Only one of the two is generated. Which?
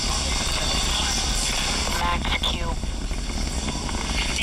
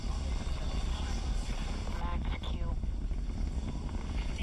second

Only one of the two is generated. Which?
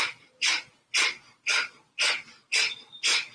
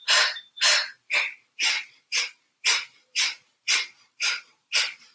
second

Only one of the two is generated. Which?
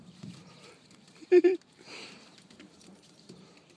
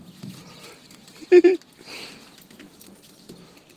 first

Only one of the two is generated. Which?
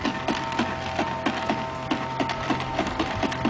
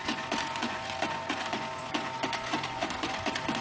second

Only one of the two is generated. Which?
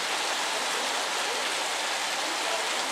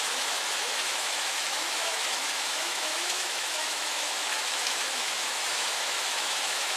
second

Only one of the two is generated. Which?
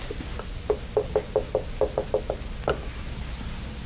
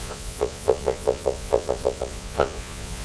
second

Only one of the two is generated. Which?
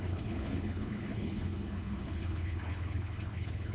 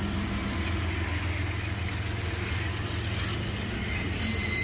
first